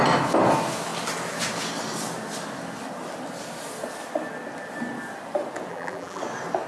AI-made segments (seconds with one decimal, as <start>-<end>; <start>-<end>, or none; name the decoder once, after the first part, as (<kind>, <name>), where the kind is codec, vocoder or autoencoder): 5.7-6.2 (vocoder, BigVGAN v2)